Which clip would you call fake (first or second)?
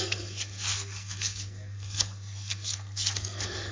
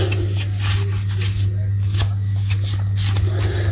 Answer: first